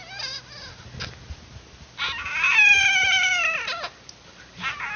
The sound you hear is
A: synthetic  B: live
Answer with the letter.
B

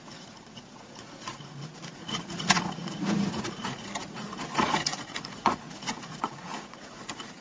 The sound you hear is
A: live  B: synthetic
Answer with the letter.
B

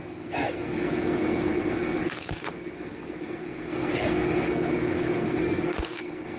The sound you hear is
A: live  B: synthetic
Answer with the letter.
B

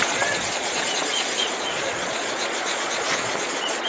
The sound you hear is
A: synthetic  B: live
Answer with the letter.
A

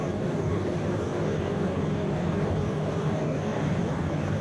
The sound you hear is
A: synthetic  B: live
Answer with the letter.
A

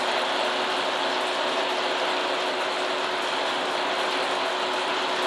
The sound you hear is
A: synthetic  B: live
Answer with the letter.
B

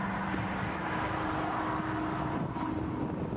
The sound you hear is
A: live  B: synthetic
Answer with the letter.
A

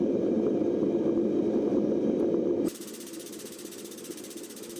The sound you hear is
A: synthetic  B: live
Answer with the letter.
B